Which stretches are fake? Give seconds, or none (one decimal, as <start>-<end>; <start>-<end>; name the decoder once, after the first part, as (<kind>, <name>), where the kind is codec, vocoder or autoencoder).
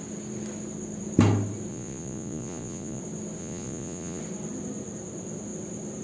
1.7-3.0 (vocoder, Vocos); 3.4-4.2